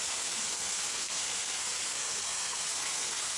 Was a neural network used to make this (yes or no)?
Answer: yes